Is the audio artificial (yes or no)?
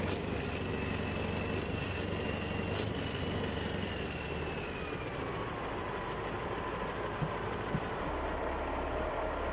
no